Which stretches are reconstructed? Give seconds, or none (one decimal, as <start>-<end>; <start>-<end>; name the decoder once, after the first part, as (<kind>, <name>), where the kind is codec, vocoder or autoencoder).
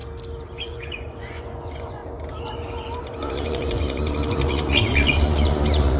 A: 0.6-2.0 (vocoder, Vocos); 3.0-6.0